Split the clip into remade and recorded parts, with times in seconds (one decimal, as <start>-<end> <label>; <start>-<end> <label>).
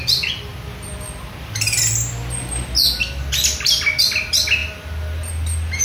0.0-5.8 recorded